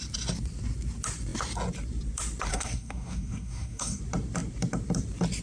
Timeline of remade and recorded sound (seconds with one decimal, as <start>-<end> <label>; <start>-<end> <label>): 0.0-2.5 recorded; 2.5-4.0 remade; 4.0-5.4 recorded